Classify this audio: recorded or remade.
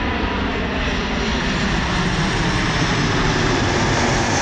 recorded